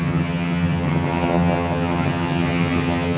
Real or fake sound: fake